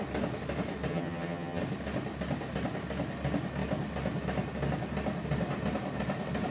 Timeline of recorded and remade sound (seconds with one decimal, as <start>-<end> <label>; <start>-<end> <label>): 0.0-0.9 recorded; 0.9-1.6 remade; 1.6-6.5 recorded